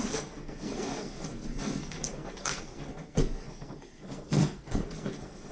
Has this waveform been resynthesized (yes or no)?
yes